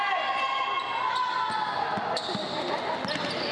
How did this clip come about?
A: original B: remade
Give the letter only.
A